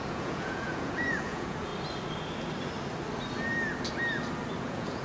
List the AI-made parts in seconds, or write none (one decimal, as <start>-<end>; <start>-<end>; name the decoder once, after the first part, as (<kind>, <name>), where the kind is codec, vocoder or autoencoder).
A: 0.0-1.7 (vocoder, Vocos); 4.6-5.0

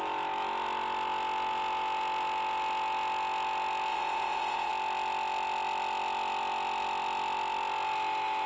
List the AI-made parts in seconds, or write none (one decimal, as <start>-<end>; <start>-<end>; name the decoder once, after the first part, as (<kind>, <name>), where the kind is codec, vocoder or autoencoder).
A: 3.9-4.7 (vocoder, Vocos)

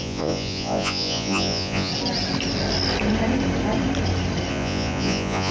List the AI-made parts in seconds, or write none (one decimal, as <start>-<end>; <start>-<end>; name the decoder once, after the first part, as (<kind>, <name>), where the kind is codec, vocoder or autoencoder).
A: 0.0-1.9 (vocoder, Vocos); 4.5-5.5

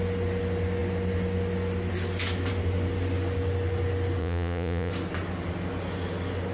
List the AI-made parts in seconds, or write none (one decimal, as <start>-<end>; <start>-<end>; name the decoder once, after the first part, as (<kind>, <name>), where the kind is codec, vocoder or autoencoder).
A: 4.2-4.9 (vocoder, Vocos)

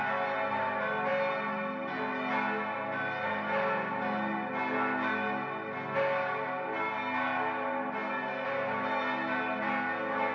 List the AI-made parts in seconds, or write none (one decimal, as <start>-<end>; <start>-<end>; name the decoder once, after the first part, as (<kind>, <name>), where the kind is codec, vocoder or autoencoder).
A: none

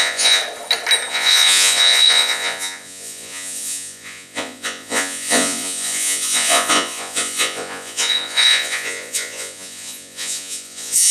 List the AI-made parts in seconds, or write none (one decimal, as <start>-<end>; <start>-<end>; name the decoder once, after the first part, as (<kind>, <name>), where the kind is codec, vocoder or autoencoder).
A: 0.0-0.4 (vocoder, Vocos); 1.1-11.1

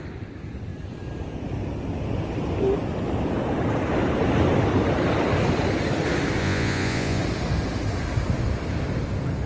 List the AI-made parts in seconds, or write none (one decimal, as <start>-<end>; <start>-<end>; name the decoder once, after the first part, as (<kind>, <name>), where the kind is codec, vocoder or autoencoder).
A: 6.4-7.2 (vocoder, Vocos)

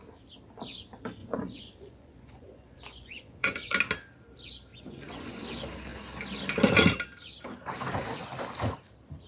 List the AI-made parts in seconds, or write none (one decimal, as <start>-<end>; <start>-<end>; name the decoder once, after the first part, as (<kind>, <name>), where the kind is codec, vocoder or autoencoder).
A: 1.2-3.8 (vocoder, Vocos); 4.7-5.4